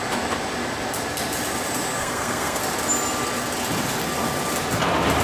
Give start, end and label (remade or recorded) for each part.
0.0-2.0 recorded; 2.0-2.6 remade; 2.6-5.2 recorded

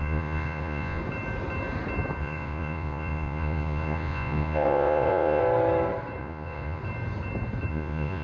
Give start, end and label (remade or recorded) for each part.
0.0-1.0 remade; 1.0-2.2 recorded; 2.2-5.4 remade; 5.4-6.2 recorded; 6.2-6.8 remade; 6.8-7.7 recorded; 7.7-8.2 remade

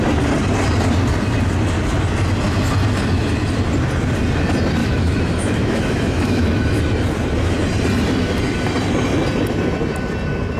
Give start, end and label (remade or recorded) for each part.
0.0-4.8 recorded; 4.8-6.8 remade; 6.8-10.6 recorded

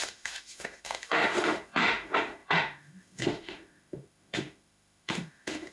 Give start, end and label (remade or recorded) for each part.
0.0-5.7 remade